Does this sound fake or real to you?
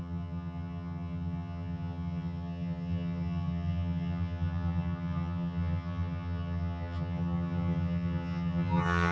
fake